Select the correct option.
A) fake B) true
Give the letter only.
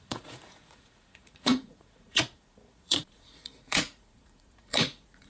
A